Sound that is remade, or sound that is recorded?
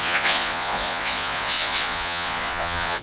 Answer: remade